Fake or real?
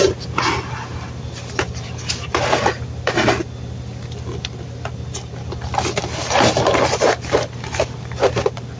fake